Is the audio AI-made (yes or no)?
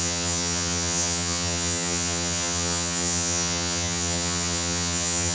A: yes